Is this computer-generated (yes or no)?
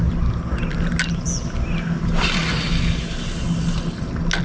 no